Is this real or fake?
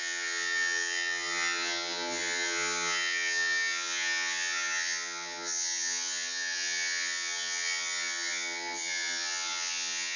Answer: fake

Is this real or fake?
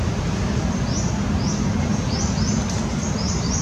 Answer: real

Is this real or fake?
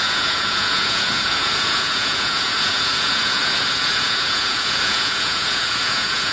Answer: fake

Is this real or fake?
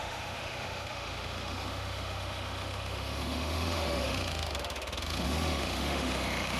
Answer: fake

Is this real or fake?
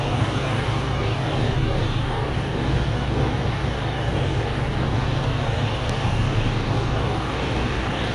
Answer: fake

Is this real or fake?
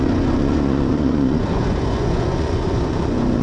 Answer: fake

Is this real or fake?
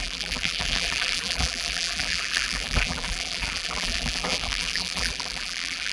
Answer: fake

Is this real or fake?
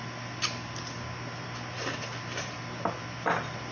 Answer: real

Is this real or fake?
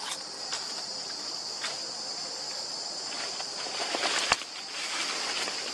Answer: real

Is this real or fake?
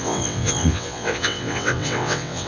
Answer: fake